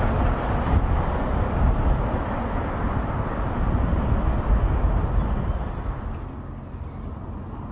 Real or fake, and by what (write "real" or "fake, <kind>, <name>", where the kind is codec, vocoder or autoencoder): real